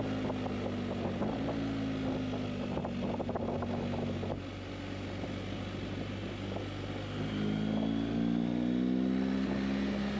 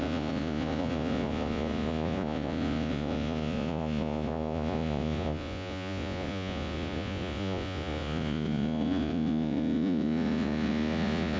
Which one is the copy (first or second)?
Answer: second